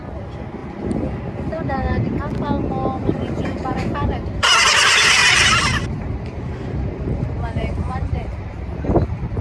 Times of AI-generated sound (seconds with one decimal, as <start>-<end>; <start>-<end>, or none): 0.6-2.2; 3.0-4.5; 5.2-8.9